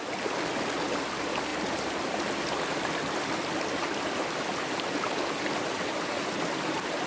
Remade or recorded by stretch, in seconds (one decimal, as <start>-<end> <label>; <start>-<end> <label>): 0.0-7.1 recorded